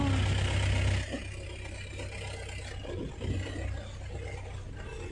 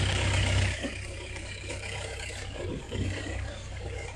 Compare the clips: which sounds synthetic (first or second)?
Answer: second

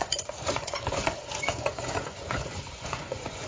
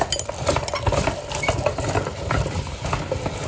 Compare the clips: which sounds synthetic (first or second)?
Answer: first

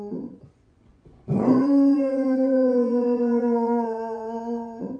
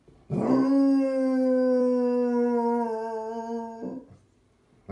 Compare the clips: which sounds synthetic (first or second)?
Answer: first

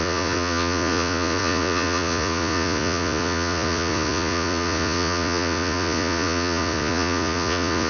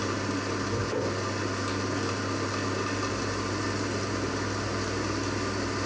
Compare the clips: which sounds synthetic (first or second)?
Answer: first